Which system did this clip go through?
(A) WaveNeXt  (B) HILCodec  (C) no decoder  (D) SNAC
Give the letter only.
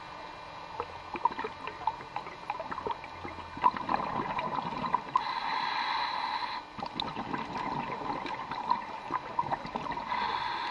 C